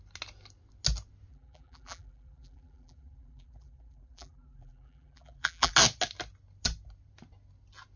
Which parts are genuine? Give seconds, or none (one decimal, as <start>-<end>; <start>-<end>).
0.0-1.3; 5.7-8.0